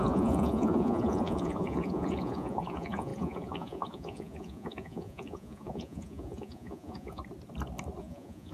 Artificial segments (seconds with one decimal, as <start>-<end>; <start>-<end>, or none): 0.0-7.2; 8.0-8.5